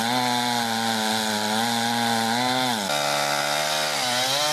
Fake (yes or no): no